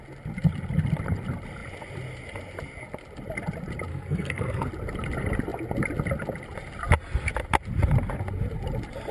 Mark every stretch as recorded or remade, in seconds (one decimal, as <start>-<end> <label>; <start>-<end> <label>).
0.0-3.9 recorded; 3.9-4.7 remade; 4.7-9.1 recorded